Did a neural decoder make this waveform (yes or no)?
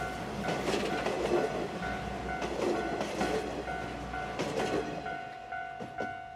no